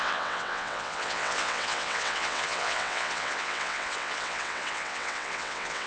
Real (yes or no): no